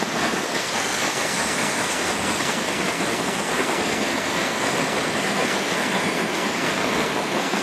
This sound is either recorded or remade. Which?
remade